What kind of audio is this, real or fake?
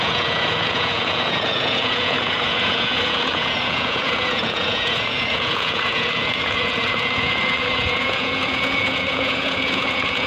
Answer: fake